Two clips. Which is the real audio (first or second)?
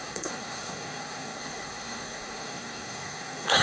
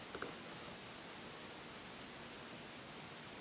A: second